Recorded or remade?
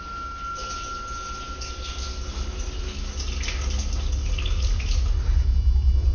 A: recorded